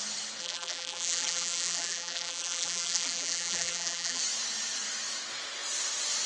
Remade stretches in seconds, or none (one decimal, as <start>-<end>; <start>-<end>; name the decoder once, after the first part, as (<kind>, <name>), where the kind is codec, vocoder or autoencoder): 0.4-4.2 (vocoder, BigVGAN v2)